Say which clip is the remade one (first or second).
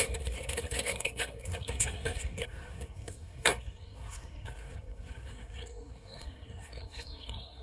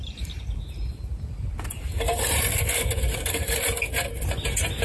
first